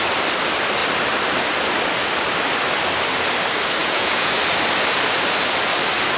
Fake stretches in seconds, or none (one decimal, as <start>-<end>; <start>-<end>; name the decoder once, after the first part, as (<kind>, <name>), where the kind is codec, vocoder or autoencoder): 3.8-4.3 (vocoder, Vocos)